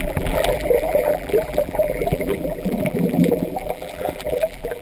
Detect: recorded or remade remade